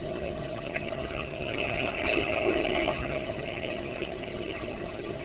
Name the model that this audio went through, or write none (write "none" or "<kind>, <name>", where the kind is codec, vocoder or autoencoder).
vocoder, HiFi-GAN